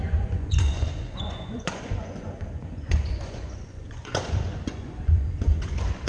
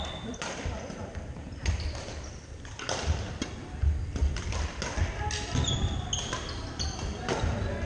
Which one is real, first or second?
second